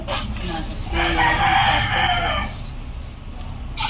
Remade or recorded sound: recorded